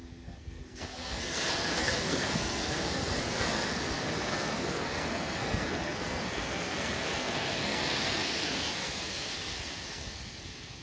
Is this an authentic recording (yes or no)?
no